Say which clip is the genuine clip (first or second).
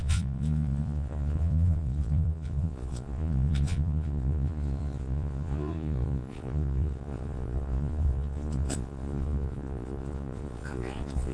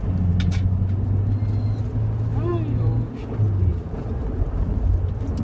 second